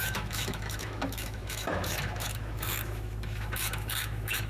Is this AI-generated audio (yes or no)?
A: yes